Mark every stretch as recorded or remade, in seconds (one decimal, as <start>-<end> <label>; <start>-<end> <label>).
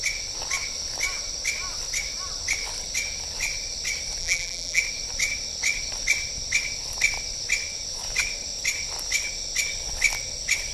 0.0-4.2 recorded; 4.2-4.8 remade; 4.8-10.7 recorded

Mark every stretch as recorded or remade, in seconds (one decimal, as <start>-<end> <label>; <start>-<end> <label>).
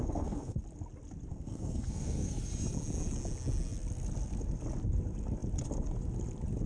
0.0-0.6 remade; 0.6-1.3 recorded; 1.3-2.4 remade; 2.4-6.7 recorded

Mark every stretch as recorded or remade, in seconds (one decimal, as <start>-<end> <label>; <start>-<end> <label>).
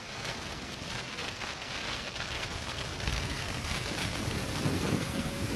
0.0-5.6 remade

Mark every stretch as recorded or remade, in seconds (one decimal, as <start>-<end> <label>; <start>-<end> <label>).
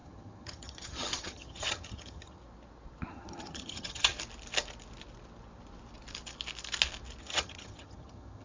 0.0-2.4 remade; 2.4-3.1 recorded; 3.1-4.1 remade; 4.1-7.2 recorded; 7.2-8.4 remade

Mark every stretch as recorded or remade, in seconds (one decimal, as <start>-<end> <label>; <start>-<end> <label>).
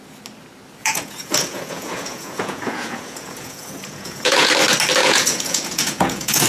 0.0-0.8 recorded; 0.8-4.5 remade; 4.5-5.0 recorded; 5.0-6.5 remade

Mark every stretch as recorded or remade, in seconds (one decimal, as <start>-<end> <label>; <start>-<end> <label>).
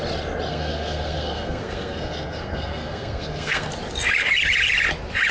0.0-0.5 recorded; 0.5-3.7 remade; 3.7-5.3 recorded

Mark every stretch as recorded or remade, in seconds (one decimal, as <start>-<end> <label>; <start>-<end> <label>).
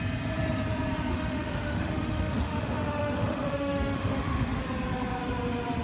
0.0-1.1 recorded; 1.1-4.6 remade; 4.6-5.8 recorded